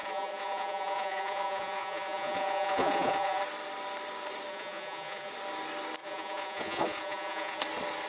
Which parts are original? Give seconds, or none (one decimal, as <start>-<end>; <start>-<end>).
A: 3.4-4.5; 5.3-6.0; 7.6-8.1